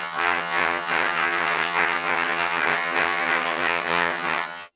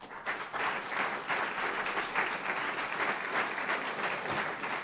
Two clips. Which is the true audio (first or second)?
second